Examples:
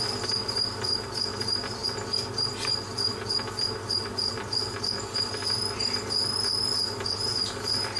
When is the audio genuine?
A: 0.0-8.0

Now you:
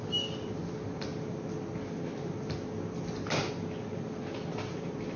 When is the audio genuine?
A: 0.0-5.2

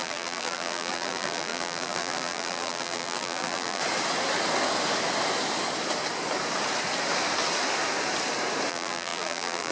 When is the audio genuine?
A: 3.8-8.7

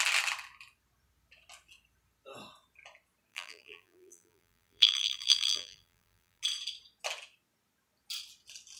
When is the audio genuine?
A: 0.0-3.3; 6.4-8.8

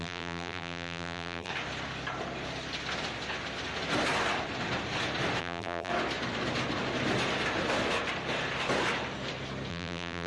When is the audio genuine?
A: 1.5-5.4; 5.9-9.7